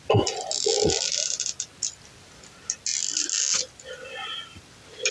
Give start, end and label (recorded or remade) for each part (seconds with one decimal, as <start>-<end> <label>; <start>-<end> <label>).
0.0-5.1 recorded